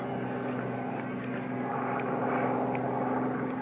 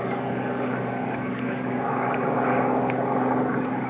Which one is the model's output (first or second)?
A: second